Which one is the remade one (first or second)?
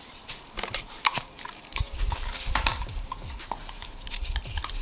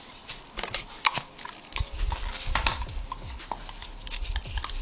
first